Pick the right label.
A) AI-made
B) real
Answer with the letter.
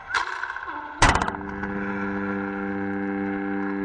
B